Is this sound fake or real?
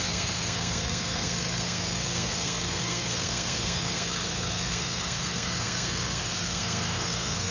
fake